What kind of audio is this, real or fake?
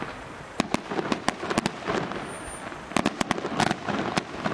real